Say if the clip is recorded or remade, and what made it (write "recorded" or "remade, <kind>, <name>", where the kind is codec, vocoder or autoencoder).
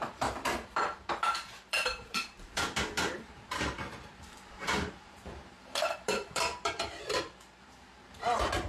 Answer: remade, vocoder, BigVGAN v2